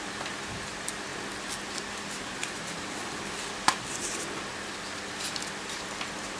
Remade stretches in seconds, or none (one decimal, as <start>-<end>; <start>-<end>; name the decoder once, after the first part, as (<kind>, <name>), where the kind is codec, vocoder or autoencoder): 0.0-1.1 (vocoder, BigVGAN v2); 1.9-2.4